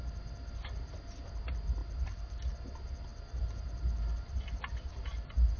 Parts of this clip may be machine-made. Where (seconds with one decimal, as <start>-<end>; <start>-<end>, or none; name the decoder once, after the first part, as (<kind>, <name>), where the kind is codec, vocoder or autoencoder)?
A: 1.8-2.4 (vocoder, BigVGAN v2); 3.1-5.6